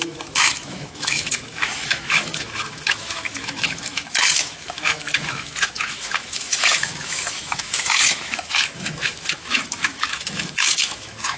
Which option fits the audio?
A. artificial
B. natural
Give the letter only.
A